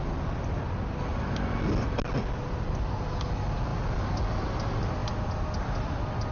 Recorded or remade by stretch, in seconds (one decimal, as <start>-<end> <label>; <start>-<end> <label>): 0.0-6.3 recorded